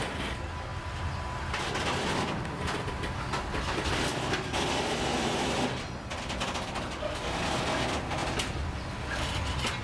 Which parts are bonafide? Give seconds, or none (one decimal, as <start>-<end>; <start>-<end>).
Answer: 0.0-9.8